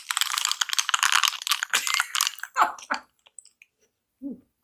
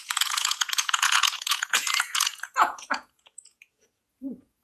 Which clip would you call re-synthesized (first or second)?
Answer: second